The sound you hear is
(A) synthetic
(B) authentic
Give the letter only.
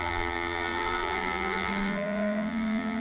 A